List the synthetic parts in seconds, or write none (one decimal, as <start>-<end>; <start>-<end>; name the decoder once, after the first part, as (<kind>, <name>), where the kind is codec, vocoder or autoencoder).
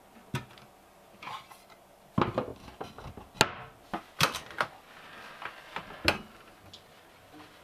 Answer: none